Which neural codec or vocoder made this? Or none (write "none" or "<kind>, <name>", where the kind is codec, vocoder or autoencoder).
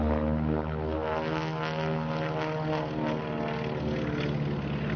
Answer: none